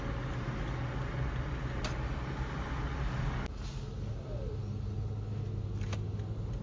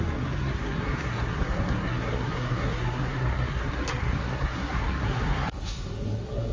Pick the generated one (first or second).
second